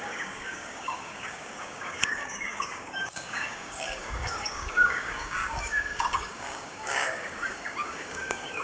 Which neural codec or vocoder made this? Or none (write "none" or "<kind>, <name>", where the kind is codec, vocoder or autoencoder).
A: codec, DAC